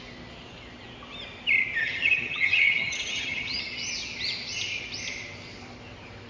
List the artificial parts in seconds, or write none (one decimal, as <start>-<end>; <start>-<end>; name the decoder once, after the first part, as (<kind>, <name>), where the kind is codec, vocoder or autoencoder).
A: 1.8-3.6 (vocoder, HiFi-GAN)